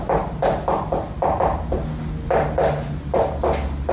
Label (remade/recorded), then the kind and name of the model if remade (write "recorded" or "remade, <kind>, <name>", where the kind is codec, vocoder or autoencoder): recorded